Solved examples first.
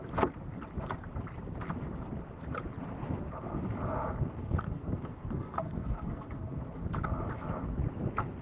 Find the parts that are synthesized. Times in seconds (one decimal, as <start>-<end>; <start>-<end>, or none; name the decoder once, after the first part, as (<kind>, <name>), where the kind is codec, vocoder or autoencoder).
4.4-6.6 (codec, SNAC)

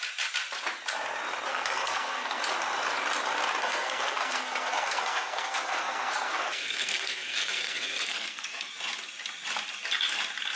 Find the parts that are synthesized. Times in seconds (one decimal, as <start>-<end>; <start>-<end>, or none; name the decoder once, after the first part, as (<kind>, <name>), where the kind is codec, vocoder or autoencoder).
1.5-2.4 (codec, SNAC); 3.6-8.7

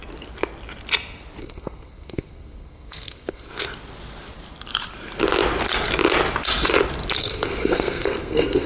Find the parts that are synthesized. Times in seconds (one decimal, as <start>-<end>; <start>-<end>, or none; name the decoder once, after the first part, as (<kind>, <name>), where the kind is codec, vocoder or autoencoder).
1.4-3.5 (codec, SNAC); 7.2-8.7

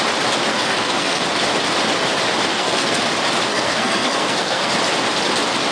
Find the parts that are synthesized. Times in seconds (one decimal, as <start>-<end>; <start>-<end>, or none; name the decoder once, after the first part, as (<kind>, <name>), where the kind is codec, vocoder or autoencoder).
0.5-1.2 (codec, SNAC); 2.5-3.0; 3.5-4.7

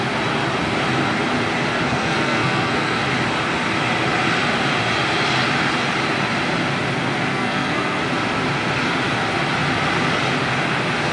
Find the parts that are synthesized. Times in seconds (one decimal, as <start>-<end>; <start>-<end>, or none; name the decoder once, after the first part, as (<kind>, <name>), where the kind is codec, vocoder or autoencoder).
1.7-3.0 (codec, SNAC); 7.3-8.0

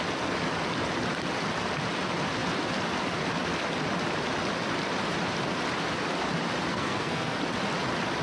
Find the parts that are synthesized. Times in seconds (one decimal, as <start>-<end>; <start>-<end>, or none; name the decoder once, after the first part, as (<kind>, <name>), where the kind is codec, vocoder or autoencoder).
6.7-7.4 (codec, SNAC)

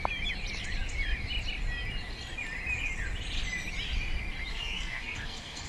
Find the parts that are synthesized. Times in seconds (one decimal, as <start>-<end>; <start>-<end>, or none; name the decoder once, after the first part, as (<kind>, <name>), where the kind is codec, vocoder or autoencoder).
4.5-5.7 (codec, SNAC)

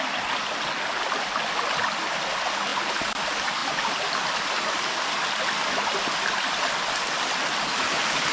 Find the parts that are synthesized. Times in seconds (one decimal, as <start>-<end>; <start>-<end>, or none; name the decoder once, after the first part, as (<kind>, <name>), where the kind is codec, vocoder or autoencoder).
none